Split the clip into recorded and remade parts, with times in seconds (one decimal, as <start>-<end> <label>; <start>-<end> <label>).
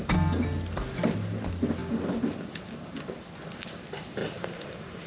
0.0-4.2 recorded; 4.2-5.1 remade